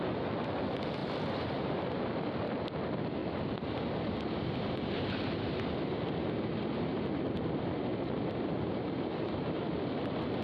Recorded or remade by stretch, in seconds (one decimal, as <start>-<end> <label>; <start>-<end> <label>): 0.0-1.0 recorded; 1.0-1.7 remade; 1.7-3.2 recorded; 3.2-3.9 remade; 3.9-7.9 recorded; 7.9-9.6 remade; 9.6-10.4 recorded